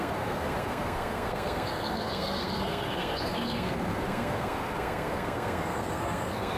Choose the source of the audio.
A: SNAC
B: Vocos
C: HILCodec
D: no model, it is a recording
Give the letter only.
A